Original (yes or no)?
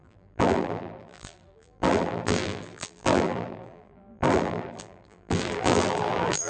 no